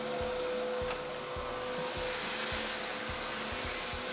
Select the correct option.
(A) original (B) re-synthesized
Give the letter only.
A